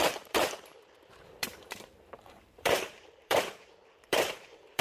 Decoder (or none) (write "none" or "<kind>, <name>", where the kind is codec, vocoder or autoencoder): vocoder, BigVGAN v2